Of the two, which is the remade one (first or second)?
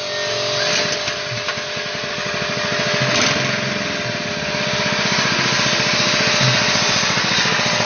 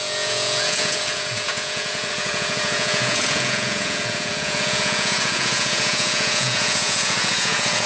second